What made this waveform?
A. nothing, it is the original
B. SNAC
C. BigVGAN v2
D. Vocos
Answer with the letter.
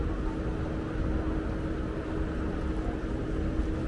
A